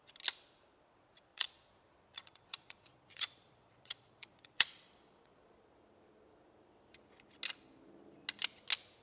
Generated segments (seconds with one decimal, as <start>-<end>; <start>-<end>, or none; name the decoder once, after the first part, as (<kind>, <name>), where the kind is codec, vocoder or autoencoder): 1.3-5.6 (vocoder, Vocos)